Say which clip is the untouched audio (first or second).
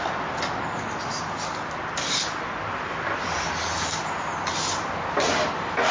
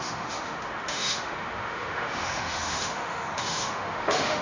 first